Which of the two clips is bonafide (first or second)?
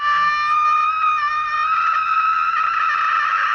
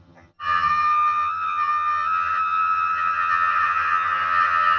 first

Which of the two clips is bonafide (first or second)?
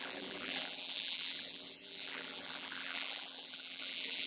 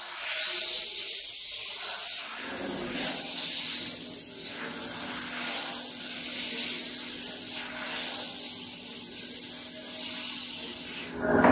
second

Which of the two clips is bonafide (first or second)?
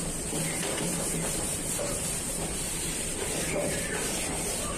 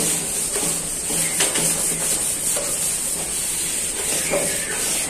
second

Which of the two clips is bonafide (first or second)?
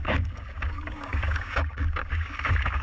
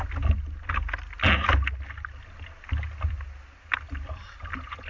second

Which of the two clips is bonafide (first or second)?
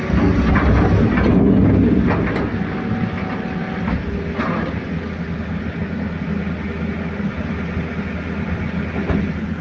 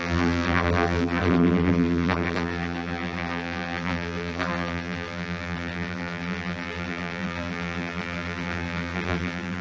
first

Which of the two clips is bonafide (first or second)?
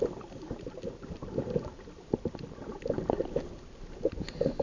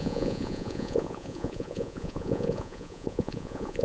first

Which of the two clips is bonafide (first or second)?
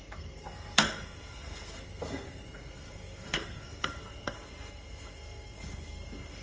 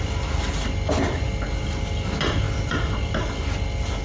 second